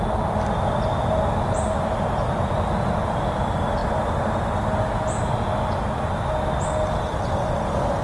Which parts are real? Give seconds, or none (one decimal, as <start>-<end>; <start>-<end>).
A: 0.0-8.0